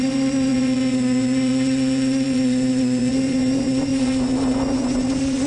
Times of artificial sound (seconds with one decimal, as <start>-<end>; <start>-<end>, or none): 0.0-5.5